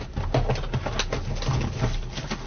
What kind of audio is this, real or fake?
real